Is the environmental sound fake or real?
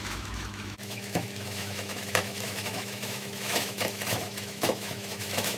fake